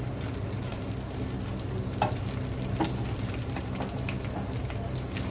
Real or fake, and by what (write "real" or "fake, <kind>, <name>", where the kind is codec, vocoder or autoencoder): fake, vocoder, BigVGAN v2